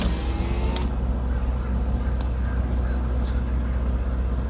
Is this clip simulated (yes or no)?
no